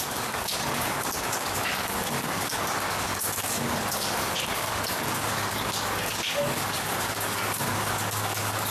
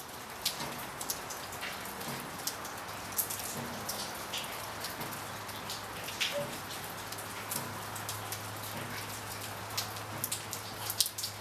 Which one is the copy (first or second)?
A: first